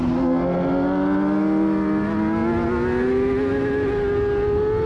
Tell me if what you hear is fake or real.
real